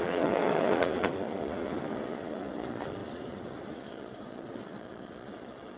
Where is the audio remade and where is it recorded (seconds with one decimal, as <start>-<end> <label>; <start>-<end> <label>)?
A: 0.0-5.8 remade